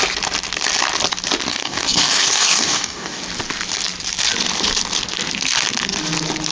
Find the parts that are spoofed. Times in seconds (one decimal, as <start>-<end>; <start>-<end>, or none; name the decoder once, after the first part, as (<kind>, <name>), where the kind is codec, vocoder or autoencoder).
1.5-3.2 (codec, DAC)